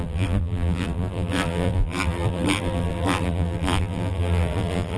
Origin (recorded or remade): remade